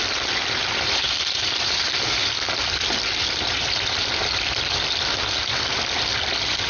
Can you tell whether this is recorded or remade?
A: remade